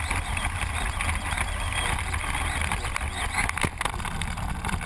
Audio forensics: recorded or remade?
recorded